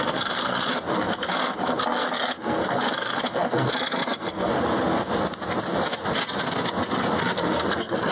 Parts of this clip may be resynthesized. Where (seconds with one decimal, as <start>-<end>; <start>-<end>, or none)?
0.0-4.5; 7.2-8.1